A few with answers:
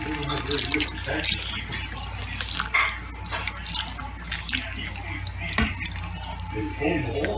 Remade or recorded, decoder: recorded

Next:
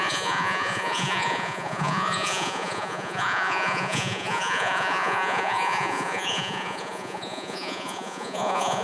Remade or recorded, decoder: remade, vocoder, Vocos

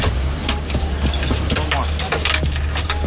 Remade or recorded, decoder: recorded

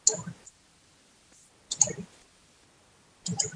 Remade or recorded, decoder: recorded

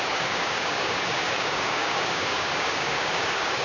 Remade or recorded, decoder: remade, codec, DAC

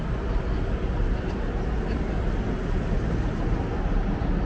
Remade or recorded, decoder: recorded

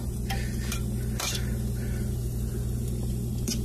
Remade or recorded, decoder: recorded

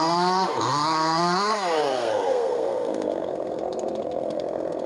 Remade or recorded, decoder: remade, codec, SNAC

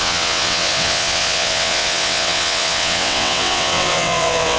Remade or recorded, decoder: remade, vocoder, WaveNeXt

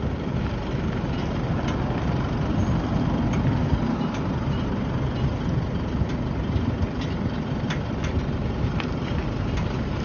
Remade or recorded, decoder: recorded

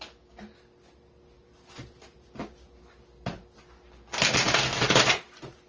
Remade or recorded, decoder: recorded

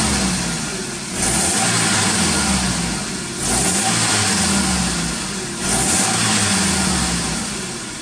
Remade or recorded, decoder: recorded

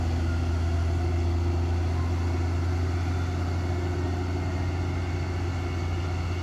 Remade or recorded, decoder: recorded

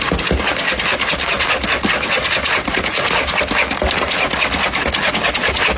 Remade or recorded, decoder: recorded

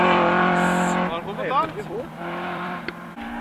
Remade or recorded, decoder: remade, vocoder, BigVGAN v2